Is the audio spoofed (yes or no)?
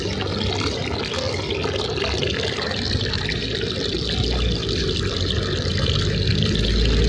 no